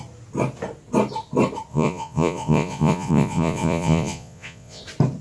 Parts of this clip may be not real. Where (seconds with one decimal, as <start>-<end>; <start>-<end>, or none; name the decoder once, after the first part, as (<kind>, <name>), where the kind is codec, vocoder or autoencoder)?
1.7-4.8 (vocoder, Vocos)

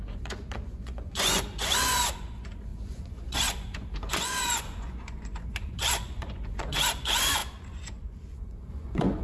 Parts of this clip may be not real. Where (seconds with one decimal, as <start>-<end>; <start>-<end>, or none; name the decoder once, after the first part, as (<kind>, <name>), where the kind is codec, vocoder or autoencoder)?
0.0-9.2 (vocoder, Vocos)

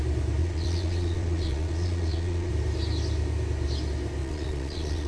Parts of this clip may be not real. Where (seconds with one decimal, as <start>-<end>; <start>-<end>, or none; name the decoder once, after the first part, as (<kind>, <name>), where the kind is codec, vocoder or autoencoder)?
0.4-2.5 (vocoder, Vocos); 4.2-5.1

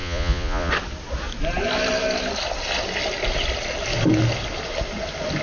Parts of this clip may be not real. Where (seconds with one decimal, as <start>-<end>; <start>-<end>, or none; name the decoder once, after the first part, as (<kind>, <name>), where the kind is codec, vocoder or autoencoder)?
0.0-0.7 (vocoder, Vocos)

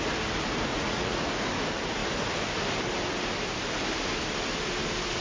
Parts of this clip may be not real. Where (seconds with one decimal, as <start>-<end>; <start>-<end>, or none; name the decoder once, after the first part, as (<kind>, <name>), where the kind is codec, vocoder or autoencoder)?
0.7-1.3 (vocoder, Vocos)

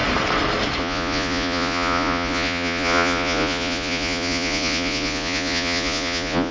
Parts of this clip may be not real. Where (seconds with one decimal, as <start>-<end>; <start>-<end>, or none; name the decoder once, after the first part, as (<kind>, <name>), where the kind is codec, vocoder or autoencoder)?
0.8-6.5 (vocoder, Vocos)

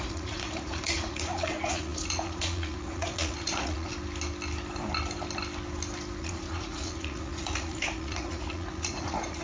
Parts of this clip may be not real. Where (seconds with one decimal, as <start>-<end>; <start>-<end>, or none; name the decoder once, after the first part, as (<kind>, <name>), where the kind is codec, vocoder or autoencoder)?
0.0-3.9 (vocoder, Vocos); 6.2-9.4

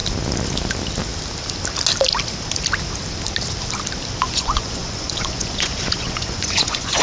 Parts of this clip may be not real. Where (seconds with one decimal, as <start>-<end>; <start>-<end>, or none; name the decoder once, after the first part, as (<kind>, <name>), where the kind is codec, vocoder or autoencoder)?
4.2-7.0 (vocoder, Vocos)